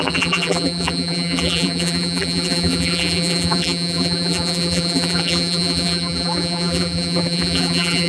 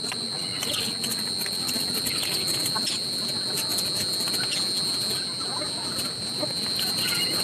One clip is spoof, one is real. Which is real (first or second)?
second